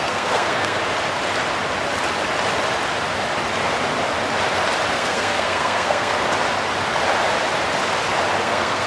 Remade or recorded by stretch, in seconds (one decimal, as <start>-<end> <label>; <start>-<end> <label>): 0.0-0.8 remade; 0.8-4.9 recorded; 4.9-6.1 remade; 6.1-8.4 recorded; 8.4-8.9 remade